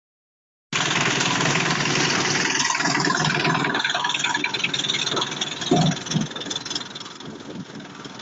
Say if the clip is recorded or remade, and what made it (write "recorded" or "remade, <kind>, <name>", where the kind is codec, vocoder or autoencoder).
recorded